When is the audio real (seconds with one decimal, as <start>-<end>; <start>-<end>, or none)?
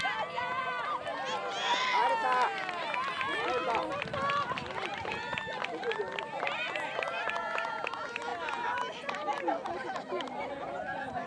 0.0-11.3